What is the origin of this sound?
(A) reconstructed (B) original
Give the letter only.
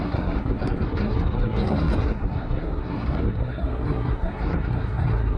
A